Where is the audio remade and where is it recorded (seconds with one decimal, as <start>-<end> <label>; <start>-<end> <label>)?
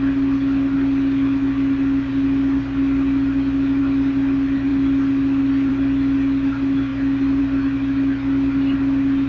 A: 0.0-9.3 recorded